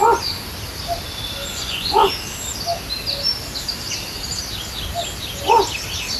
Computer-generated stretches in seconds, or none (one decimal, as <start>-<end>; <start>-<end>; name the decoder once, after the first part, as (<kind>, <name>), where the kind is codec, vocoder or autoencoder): 1.5-2.1 (vocoder, Vocos)